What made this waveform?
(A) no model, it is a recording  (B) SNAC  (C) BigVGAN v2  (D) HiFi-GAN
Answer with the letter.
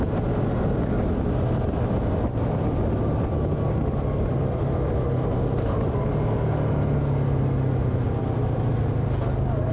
A